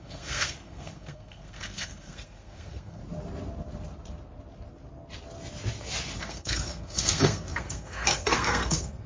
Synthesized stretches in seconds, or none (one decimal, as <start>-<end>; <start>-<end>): 0.0-3.0; 6.2-9.1